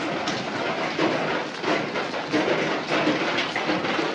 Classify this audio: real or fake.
real